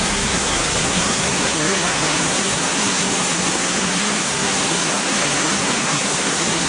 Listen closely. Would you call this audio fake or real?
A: fake